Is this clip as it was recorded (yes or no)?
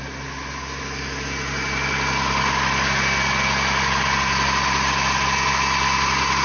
yes